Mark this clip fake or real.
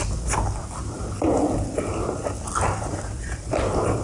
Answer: real